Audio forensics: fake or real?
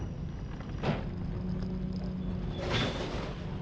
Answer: real